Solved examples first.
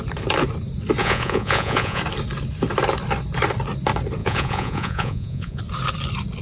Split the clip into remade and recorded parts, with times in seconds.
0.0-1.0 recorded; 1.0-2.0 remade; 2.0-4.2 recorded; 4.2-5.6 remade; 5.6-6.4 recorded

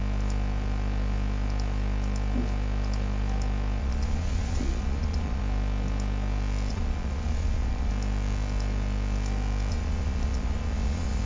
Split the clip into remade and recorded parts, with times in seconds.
0.0-3.8 recorded; 3.8-5.4 remade; 5.4-6.7 recorded; 6.7-7.9 remade; 7.9-9.7 recorded; 9.7-11.2 remade